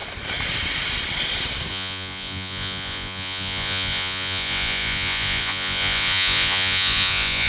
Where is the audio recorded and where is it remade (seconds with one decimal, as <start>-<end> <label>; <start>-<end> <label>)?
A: 0.0-1.7 recorded; 1.7-7.5 remade